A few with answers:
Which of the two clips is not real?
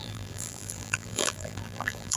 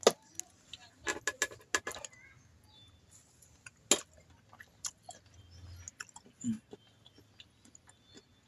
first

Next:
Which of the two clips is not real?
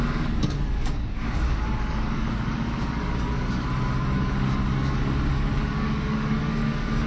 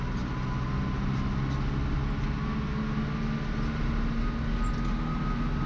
first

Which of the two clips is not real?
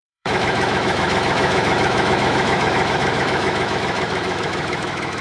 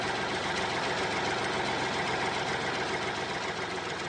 first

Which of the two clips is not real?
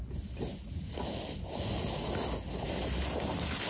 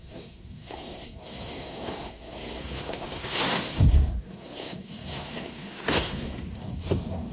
second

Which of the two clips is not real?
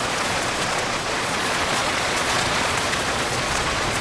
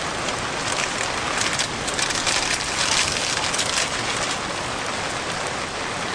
first